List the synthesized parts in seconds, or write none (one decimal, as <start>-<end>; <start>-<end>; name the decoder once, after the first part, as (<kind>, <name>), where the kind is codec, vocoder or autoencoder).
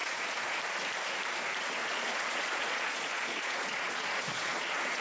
0.0-0.6 (vocoder, Vocos); 1.8-5.0